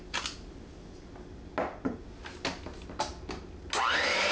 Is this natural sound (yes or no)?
yes